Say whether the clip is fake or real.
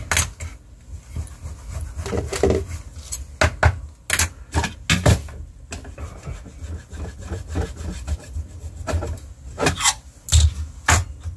real